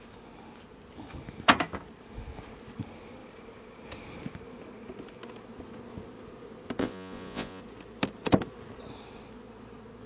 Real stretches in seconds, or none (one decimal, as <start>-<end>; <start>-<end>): 0.0-6.8; 7.6-10.1